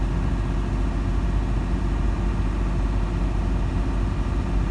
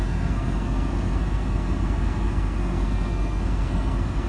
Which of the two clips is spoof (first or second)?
second